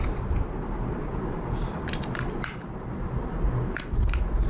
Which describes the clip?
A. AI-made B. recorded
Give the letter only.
B